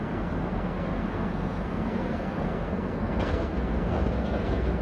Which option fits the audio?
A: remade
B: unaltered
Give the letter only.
A